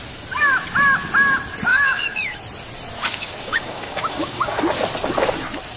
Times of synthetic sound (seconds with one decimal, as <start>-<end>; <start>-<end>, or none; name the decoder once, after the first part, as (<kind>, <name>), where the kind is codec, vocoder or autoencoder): 1.7-2.4 (codec, DAC); 3.1-4.6